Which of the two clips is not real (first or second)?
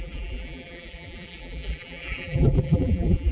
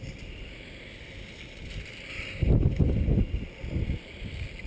first